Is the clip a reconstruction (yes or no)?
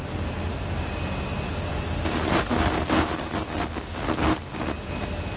no